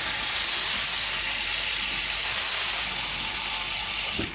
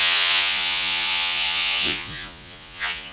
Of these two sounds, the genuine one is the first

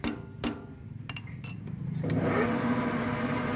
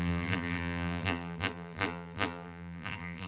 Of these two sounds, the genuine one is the first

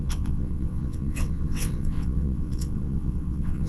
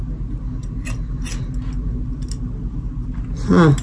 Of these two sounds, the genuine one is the second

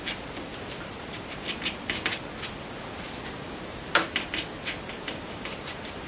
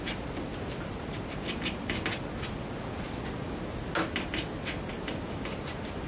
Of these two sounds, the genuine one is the second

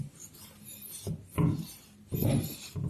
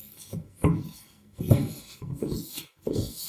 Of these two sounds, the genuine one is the first